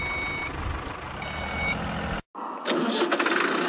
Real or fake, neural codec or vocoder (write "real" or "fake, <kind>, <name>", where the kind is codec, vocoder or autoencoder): real